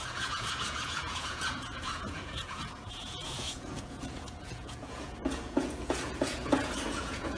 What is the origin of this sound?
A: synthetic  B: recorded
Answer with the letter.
A